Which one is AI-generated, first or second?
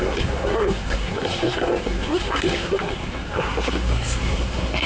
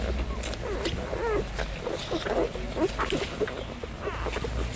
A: first